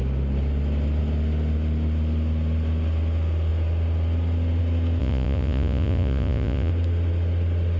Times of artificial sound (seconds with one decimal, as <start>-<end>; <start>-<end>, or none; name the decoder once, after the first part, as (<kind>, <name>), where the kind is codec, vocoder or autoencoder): 5.0-6.7 (vocoder, Vocos)